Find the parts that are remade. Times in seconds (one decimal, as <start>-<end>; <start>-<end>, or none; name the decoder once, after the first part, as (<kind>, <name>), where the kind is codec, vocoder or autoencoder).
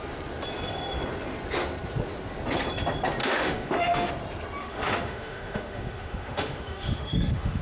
3.2-4.1 (autoencoder, DAC-VAE); 4.6-7.6